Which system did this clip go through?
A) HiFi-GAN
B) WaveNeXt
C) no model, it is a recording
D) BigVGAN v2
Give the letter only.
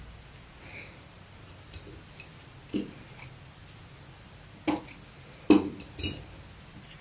C